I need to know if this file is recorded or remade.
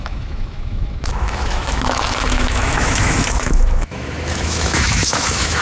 remade